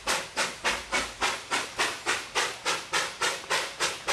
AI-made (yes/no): no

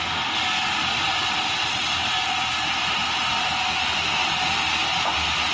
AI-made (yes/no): no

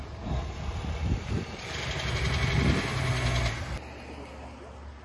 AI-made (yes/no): no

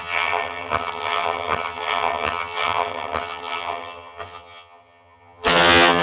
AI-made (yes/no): yes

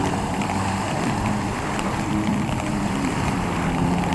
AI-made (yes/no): yes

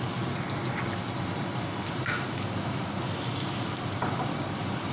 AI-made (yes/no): no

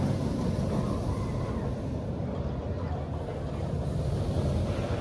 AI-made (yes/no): no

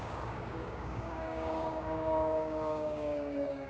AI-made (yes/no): yes